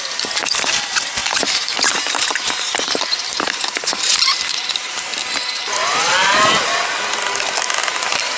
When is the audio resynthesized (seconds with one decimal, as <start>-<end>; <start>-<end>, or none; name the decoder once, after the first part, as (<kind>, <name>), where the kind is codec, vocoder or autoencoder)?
0.0-5.1 (vocoder, BigVGAN v2); 7.8-8.4